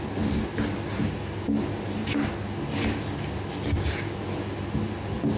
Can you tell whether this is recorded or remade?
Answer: recorded